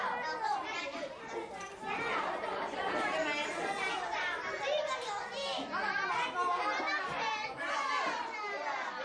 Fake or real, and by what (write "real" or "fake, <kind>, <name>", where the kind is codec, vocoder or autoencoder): real